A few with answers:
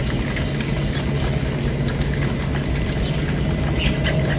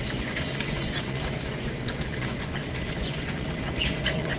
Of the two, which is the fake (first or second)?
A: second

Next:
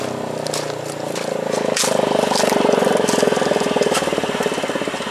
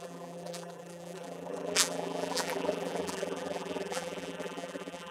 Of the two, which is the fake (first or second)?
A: second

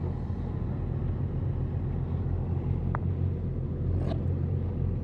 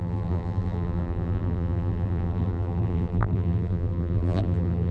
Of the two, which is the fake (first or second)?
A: second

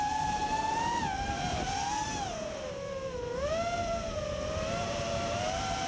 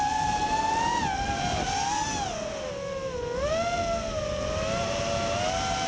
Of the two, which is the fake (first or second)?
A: first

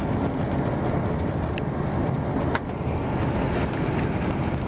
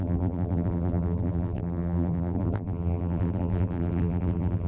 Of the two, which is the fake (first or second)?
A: second